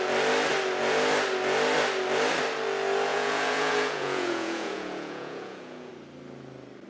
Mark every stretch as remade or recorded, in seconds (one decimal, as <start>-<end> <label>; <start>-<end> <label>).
0.0-3.1 recorded; 3.1-5.9 remade; 5.9-6.9 recorded